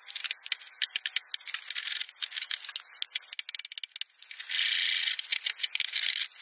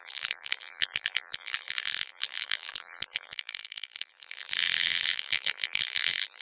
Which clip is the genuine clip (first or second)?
first